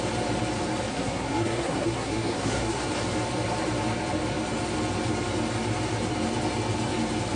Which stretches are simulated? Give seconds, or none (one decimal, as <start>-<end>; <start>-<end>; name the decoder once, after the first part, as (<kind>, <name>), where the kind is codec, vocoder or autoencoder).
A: 0.9-2.8 (codec, SNAC)